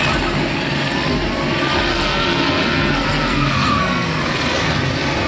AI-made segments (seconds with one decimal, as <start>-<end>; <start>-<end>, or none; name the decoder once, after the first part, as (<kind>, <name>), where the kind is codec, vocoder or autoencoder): 1.9-4.2 (codec, SNAC)